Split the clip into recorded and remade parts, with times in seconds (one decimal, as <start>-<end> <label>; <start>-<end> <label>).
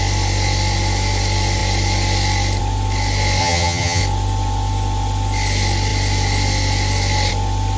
0.0-3.4 recorded; 3.4-4.0 remade; 4.0-7.8 recorded